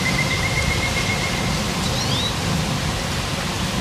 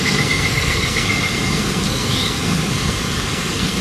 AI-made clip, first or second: second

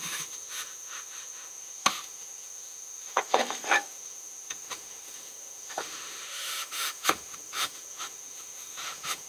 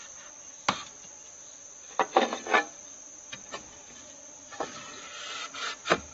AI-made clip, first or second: first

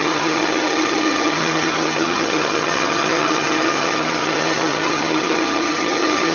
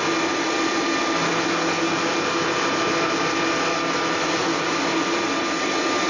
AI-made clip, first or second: first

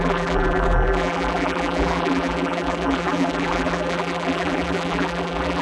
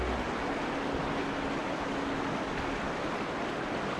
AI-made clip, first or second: first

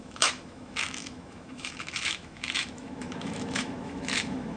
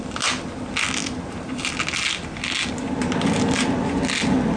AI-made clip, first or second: first